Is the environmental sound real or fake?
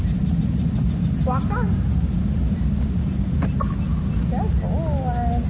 real